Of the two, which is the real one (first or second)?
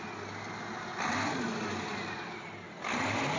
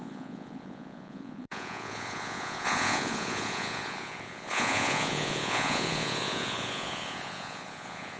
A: first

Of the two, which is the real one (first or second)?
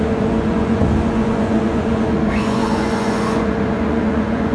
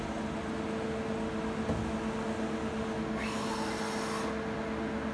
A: second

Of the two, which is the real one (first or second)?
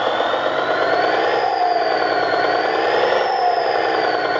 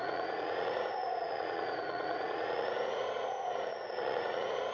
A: first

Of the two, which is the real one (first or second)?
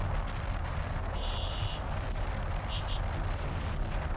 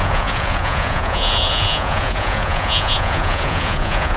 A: first